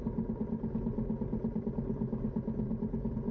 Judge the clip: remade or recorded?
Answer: recorded